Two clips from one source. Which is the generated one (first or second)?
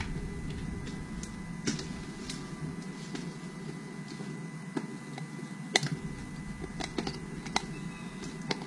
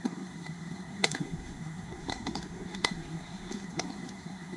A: second